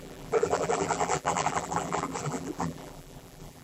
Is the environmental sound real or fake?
fake